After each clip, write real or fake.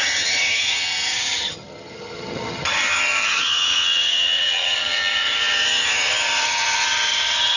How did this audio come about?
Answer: fake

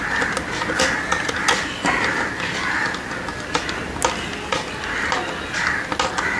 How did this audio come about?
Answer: real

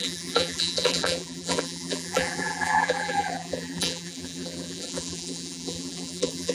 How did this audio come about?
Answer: fake